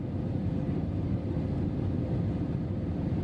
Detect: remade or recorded recorded